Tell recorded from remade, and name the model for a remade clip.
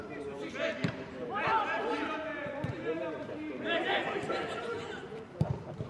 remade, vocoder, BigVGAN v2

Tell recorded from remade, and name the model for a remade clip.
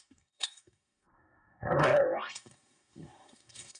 remade, codec, SNAC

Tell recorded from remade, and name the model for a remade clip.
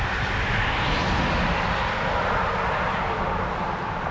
recorded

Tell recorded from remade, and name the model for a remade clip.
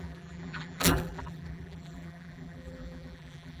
remade, vocoder, BigVGAN v2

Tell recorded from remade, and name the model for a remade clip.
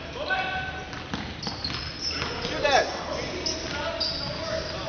recorded